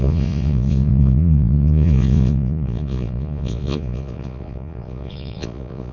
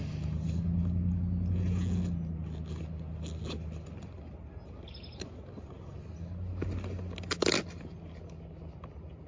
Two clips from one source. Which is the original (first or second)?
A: second